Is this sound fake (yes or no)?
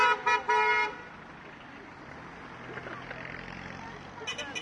no